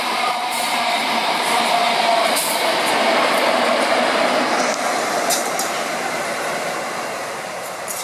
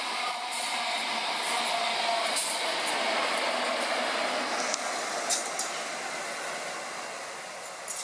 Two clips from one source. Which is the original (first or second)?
second